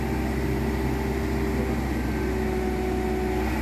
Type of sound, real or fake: real